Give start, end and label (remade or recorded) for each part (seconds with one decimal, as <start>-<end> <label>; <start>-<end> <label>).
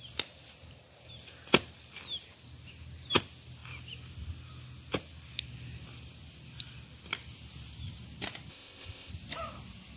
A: 0.0-8.5 recorded; 8.5-9.1 remade; 9.1-10.0 recorded